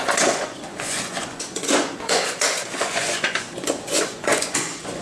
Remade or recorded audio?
remade